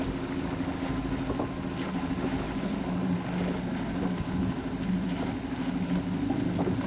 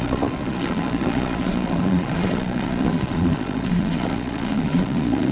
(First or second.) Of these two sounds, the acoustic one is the first